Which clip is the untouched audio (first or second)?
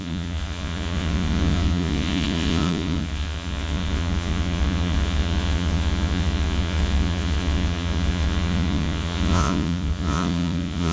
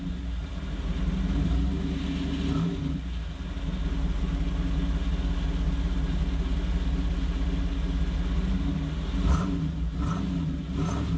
second